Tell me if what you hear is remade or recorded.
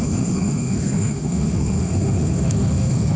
remade